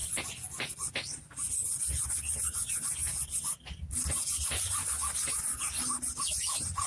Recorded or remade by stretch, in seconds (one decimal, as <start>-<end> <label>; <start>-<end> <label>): 0.0-6.9 recorded